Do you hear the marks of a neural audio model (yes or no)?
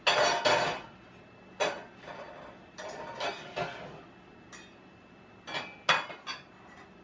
no